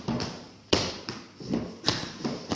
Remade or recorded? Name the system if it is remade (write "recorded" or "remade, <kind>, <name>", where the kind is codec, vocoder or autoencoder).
remade, vocoder, BigVGAN v2